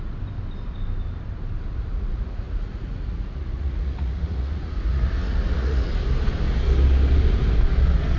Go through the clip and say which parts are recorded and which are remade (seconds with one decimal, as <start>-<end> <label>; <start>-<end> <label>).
0.0-1.7 recorded; 1.7-5.9 remade; 5.9-8.2 recorded